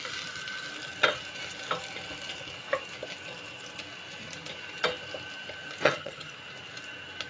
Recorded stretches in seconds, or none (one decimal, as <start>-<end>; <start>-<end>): 0.0-5.8; 6.3-7.3